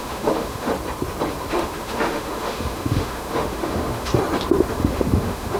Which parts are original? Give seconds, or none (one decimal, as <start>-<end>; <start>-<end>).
0.7-1.5; 4.1-4.7